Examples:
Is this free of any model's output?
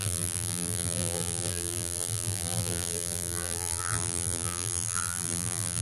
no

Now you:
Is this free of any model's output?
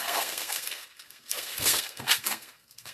no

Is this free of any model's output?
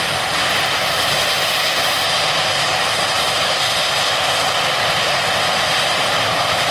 yes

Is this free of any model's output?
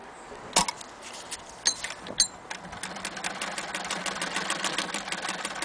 yes